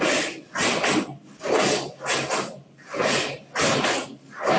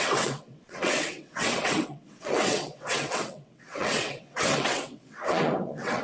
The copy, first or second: second